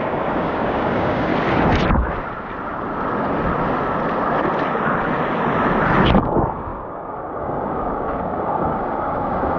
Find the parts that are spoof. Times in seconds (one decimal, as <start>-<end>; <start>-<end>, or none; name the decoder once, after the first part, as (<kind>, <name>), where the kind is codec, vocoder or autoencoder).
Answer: 0.0-1.3 (codec, DAC); 6.2-9.6